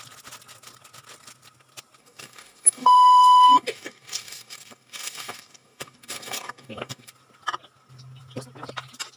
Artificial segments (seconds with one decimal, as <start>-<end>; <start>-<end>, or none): 2.0-7.1